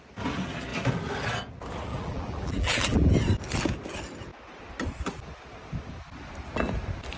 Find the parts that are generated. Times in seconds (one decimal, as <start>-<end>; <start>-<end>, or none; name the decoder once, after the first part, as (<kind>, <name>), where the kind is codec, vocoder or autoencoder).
1.9-3.1 (vocoder, BigVGAN v2)